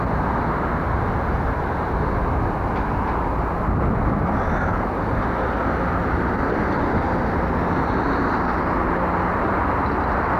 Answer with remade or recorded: recorded